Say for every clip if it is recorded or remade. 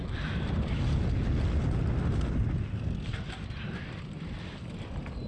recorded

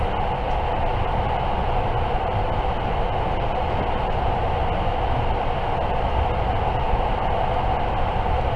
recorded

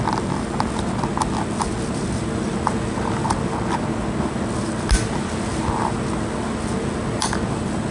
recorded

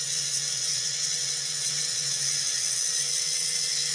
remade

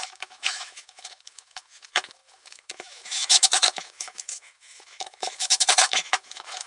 remade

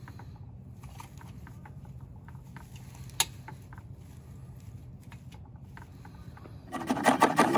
recorded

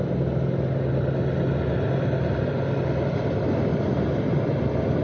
recorded